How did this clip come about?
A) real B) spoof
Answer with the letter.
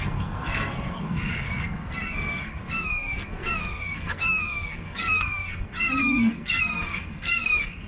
B